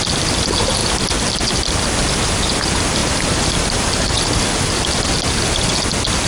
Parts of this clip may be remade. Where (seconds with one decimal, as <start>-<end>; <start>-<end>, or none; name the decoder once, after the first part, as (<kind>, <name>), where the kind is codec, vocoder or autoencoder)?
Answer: 3.0-4.4 (vocoder, BigVGAN v2)